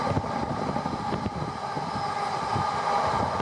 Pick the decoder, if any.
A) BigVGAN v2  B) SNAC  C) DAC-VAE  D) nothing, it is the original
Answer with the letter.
D